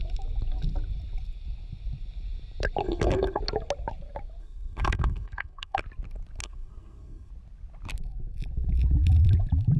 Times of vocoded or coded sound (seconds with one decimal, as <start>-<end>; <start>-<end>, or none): 2.8-3.4; 4.4-5.8; 6.4-7.3